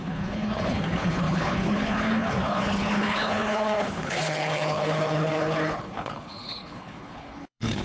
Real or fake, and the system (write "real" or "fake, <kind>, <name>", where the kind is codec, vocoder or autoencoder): fake, codec, HILCodec